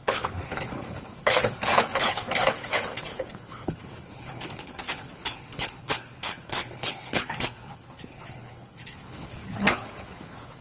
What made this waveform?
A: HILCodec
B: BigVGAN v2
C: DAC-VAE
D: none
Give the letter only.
A